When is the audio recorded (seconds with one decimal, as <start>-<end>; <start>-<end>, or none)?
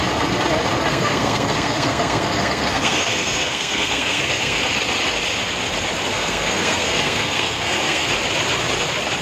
0.0-0.9; 4.6-6.1; 8.1-9.2